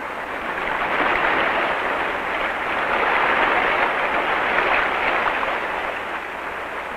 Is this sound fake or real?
real